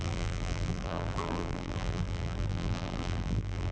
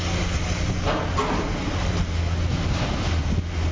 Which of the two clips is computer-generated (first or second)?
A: first